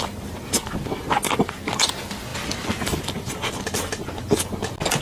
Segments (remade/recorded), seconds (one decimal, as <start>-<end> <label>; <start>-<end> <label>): 0.0-5.0 recorded